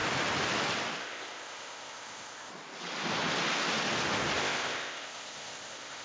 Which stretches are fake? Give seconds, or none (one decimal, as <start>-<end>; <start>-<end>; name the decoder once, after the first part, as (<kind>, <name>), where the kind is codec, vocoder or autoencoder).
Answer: 1.0-2.5 (codec, ZipCodec); 4.4-6.0